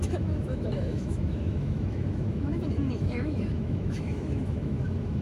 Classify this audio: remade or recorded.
remade